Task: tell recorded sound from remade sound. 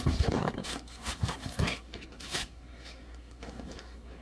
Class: remade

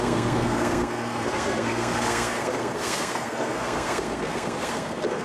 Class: remade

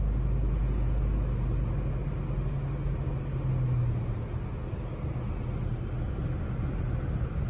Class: recorded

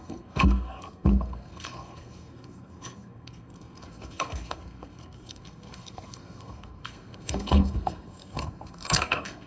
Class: remade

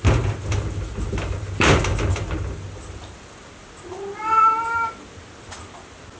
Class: recorded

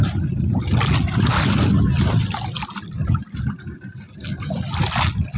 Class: recorded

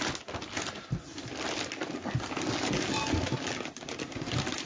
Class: recorded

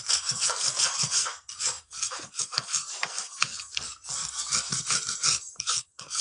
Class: remade